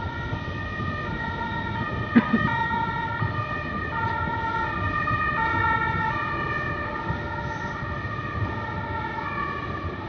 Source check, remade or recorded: recorded